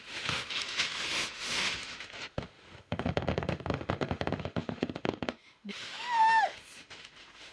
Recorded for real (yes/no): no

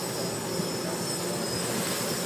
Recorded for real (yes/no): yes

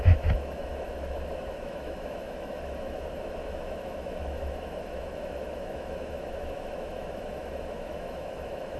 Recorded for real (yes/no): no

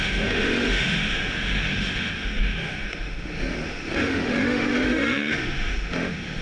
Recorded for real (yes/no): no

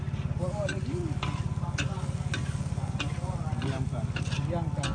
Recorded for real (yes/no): yes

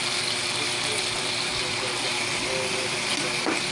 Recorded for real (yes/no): yes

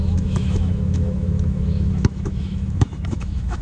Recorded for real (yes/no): no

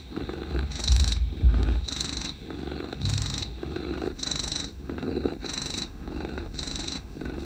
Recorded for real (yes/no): no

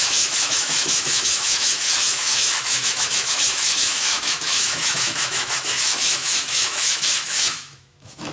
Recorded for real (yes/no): no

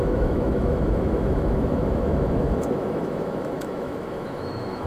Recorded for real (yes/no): no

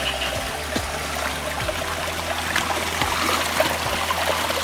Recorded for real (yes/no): yes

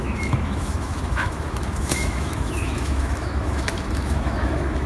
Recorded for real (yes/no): no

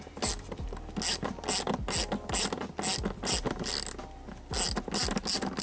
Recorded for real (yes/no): yes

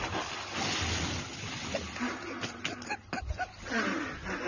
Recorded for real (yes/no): yes